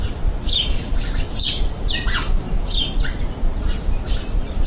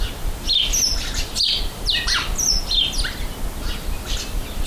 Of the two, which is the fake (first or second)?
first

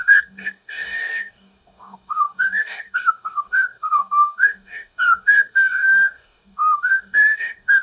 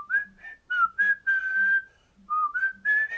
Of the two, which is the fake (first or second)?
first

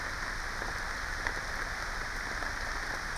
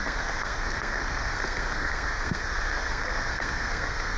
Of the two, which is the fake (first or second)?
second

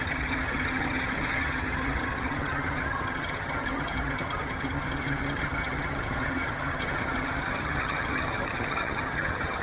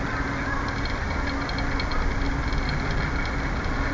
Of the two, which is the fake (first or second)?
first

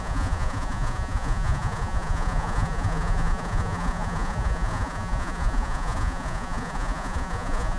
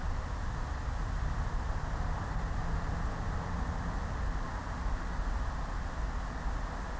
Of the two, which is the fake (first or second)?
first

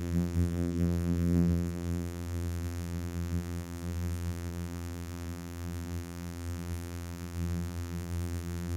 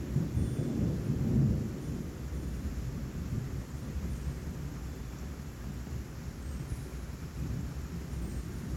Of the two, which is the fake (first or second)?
first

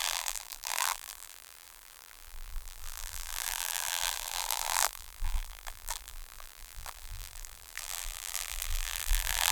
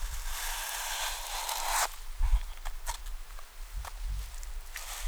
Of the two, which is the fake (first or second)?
first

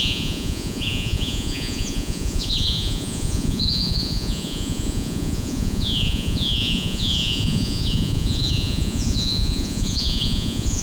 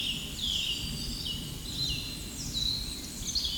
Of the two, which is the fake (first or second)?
first